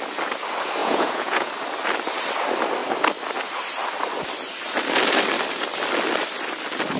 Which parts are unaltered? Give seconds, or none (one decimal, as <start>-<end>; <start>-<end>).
0.0-0.8; 1.5-7.0